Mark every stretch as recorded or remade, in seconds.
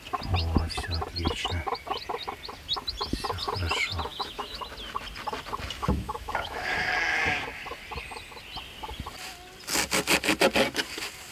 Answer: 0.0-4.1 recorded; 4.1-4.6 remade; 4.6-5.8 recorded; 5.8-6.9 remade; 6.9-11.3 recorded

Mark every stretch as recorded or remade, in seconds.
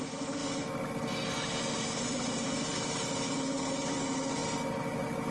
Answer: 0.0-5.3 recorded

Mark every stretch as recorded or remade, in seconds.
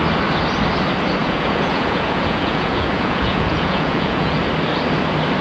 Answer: 0.0-1.2 recorded; 1.2-4.4 remade; 4.4-5.4 recorded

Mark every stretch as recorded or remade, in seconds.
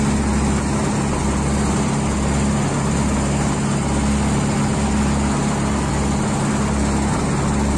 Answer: 0.0-7.8 recorded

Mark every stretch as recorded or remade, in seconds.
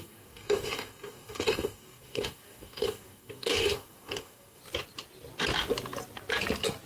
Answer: 0.0-4.6 remade; 4.6-6.9 recorded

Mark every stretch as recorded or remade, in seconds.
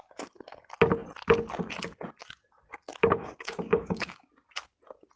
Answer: 0.0-3.0 recorded; 3.0-4.3 remade; 4.3-5.2 recorded